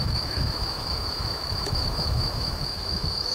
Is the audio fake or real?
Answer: fake